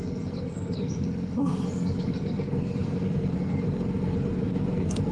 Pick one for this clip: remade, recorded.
remade